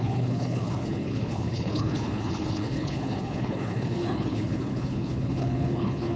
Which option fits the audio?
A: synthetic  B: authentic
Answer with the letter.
A